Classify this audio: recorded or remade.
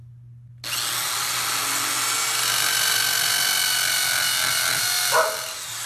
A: recorded